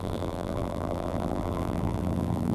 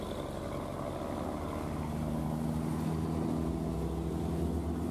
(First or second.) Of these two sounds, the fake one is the first